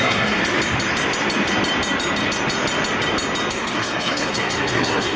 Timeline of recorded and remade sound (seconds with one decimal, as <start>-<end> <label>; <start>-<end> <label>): 0.0-0.4 remade; 0.4-3.5 recorded; 3.5-5.2 remade